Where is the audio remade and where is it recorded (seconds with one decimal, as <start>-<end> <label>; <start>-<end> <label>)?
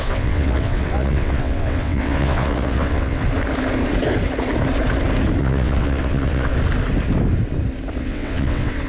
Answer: 0.0-3.2 remade; 3.2-5.4 recorded; 5.4-6.5 remade; 6.5-8.0 recorded; 8.0-8.9 remade